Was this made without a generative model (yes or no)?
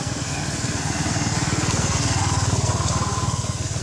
no